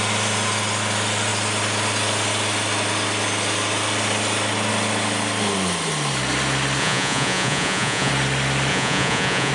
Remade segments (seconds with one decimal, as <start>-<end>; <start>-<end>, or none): 6.8-8.1; 8.7-9.5